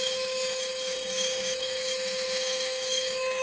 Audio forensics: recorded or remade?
remade